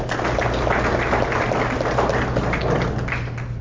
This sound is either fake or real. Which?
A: real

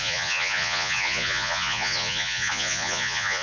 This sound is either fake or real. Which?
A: fake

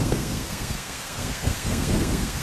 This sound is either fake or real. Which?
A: fake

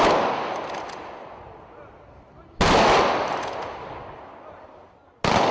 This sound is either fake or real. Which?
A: real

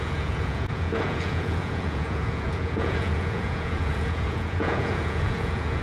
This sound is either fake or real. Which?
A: fake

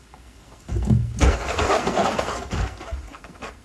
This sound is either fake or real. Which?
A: fake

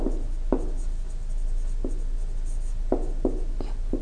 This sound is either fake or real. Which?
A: real